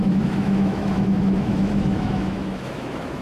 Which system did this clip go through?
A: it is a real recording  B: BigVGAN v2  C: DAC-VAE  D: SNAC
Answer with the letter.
C